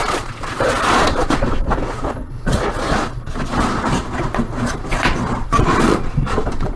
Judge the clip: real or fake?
fake